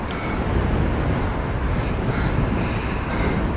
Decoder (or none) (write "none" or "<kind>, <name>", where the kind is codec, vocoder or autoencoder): none